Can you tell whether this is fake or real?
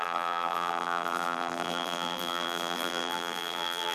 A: fake